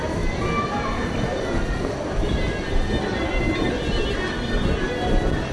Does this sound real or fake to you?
real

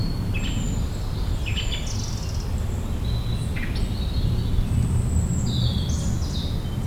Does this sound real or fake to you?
real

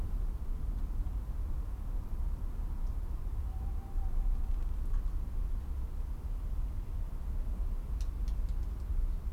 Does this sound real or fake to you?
real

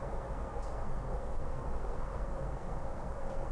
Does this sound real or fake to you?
fake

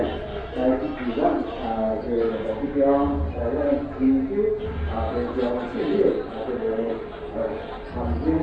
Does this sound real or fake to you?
real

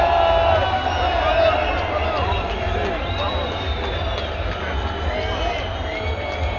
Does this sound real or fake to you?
real